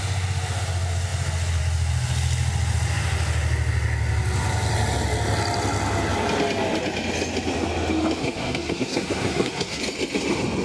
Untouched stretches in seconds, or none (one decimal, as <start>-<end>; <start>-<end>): 0.0-8.2; 9.8-10.6